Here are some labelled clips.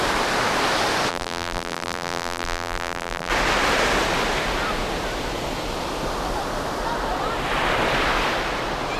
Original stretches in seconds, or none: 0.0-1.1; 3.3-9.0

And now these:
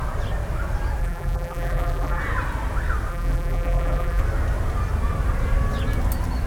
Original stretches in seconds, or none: 0.0-1.0; 2.2-3.1; 4.2-6.5